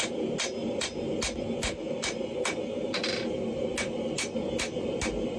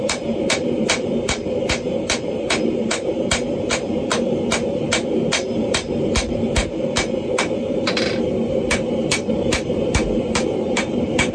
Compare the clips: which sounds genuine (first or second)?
first